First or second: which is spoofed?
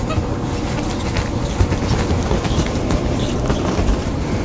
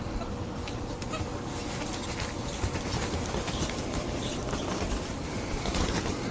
second